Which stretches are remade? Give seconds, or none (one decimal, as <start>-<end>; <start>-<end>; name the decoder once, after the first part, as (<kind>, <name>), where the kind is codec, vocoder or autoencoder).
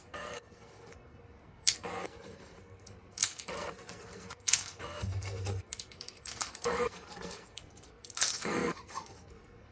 0.0-9.7 (codec, SNAC)